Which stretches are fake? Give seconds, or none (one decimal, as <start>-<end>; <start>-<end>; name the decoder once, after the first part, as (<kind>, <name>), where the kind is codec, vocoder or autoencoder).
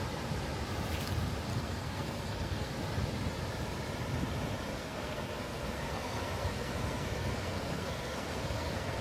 1.5-2.7 (codec, SNAC); 4.7-9.0